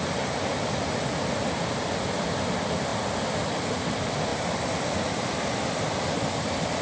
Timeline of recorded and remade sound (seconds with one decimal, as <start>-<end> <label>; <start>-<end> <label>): 0.0-6.8 recorded